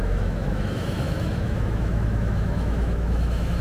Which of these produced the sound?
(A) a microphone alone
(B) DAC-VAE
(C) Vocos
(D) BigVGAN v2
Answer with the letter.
B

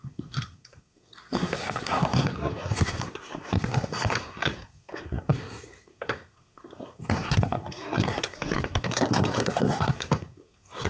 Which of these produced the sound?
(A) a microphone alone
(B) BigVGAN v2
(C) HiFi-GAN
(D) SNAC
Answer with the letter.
D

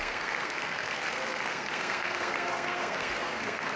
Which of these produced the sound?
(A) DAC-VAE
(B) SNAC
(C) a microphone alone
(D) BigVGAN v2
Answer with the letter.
B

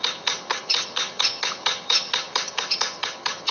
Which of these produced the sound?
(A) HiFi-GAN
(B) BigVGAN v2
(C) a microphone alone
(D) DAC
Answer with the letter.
A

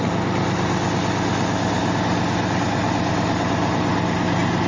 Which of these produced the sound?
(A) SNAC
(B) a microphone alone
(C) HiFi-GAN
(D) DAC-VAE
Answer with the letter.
B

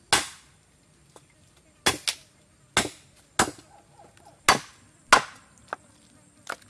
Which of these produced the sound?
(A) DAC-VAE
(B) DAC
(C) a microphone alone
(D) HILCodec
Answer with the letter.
C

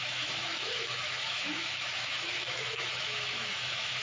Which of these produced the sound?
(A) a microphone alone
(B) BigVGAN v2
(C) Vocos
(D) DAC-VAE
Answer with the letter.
D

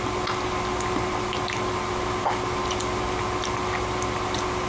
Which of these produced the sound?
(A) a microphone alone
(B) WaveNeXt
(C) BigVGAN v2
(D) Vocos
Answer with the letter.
A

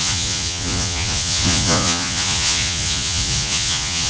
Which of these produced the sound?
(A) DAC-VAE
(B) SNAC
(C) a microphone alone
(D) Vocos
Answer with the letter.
D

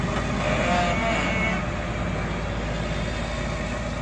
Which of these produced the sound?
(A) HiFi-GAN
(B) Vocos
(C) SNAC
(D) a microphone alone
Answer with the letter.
D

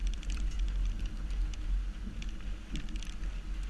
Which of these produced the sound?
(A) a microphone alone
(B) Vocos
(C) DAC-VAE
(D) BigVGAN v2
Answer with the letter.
A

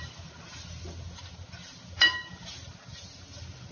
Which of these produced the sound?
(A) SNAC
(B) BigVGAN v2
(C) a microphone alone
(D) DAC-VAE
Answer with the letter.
C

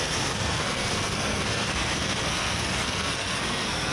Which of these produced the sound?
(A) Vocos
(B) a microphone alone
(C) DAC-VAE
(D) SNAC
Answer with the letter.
D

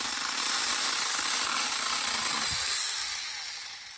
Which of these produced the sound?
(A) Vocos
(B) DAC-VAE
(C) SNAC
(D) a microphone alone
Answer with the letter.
D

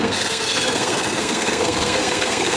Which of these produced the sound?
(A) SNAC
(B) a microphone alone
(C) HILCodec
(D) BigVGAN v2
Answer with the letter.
A